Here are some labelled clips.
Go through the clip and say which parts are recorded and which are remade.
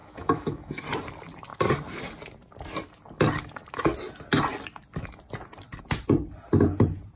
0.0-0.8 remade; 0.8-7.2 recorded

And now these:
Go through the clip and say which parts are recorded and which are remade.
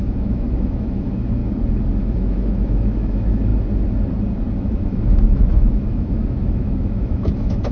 0.0-1.4 remade; 1.4-2.0 recorded; 2.0-3.5 remade; 3.5-4.6 recorded; 4.6-7.7 remade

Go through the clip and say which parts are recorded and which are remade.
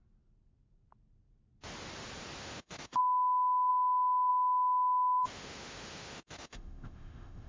0.0-2.4 recorded; 2.4-3.0 remade; 3.0-5.2 recorded; 5.2-7.5 remade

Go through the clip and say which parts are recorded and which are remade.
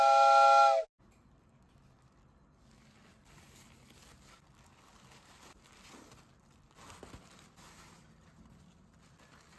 0.0-9.6 recorded